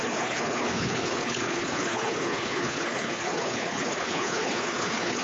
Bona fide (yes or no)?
no